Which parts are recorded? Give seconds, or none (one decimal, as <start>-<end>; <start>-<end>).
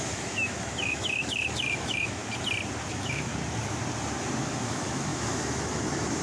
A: 2.2-2.9; 3.3-4.4